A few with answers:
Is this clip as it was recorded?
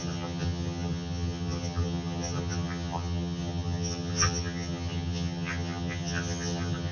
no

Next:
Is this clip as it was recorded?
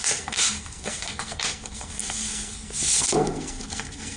no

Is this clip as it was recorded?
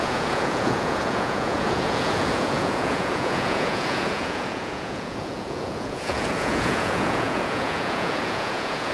no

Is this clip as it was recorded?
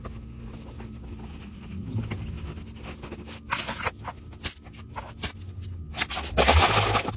yes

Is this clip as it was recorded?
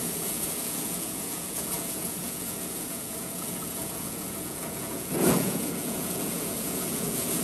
no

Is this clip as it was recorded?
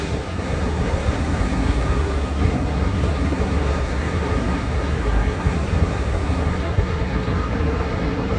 no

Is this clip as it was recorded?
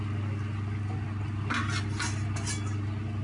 yes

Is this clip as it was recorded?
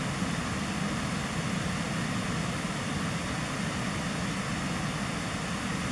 yes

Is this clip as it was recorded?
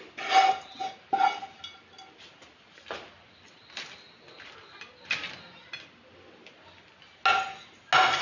yes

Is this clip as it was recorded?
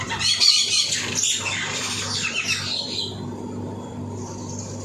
no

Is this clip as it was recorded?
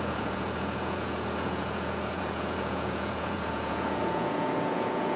no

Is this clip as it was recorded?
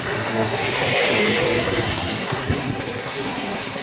no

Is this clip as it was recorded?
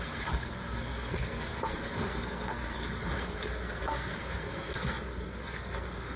no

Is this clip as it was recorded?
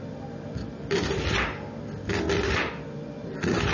yes